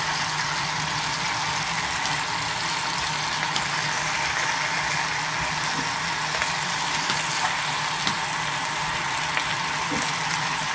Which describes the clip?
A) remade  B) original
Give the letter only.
B